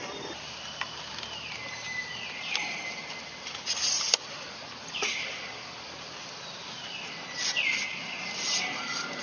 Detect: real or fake real